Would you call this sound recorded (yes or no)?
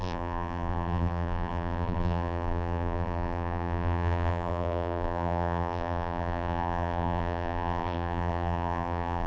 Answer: no